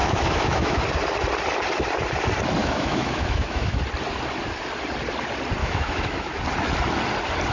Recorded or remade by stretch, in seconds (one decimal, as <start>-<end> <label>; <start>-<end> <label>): 0.0-0.8 remade; 0.8-2.6 recorded; 2.6-3.8 remade; 3.8-5.6 recorded; 5.6-6.4 remade; 6.4-7.5 recorded